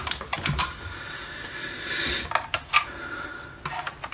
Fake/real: real